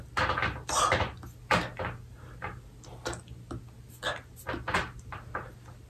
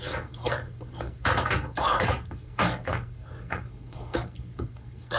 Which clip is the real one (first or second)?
first